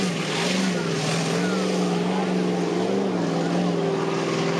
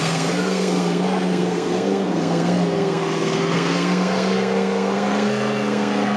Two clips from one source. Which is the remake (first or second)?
second